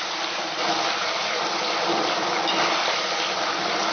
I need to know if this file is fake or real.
real